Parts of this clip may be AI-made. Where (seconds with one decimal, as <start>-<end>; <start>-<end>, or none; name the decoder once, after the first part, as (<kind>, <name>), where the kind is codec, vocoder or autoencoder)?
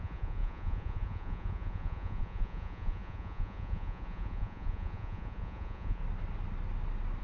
0.0-6.0 (vocoder, Vocos)